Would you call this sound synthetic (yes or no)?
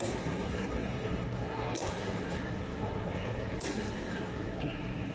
yes